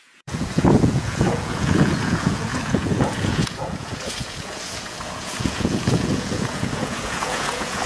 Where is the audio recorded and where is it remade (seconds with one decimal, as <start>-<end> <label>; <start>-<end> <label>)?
0.0-7.9 remade